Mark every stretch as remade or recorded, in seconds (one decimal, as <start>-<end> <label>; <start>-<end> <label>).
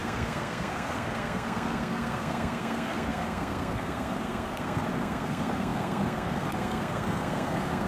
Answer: 0.0-7.9 remade